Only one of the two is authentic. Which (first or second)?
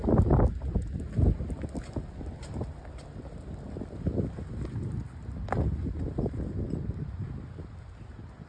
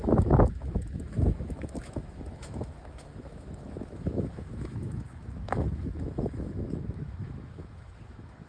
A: first